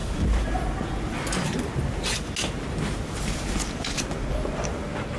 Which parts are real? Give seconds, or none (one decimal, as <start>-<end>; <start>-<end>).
0.0-5.2